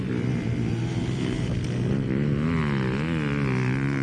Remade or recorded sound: recorded